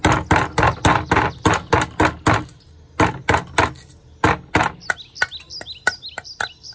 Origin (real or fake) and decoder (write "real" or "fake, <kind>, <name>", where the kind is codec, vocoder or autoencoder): real